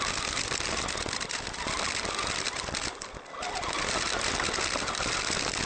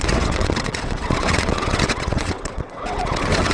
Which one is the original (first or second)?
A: first